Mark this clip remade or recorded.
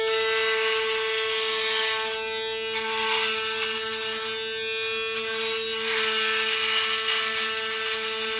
recorded